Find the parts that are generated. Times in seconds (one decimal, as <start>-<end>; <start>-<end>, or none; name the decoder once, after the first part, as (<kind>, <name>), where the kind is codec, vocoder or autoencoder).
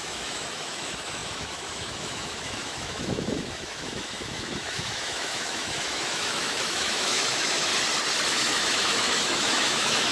0.0-7.7 (autoencoder, DAC-VAE); 8.3-10.1